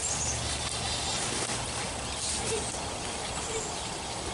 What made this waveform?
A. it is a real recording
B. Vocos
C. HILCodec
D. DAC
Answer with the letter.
A